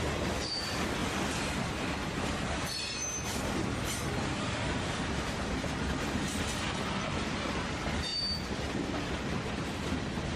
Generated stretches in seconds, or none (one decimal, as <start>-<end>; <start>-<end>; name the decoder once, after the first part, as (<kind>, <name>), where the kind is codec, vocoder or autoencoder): none